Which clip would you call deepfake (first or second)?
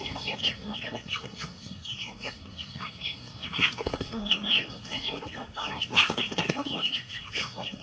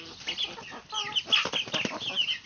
first